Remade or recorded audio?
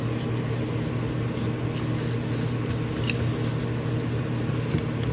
recorded